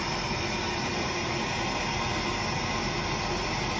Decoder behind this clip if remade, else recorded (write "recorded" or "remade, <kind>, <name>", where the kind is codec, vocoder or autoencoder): recorded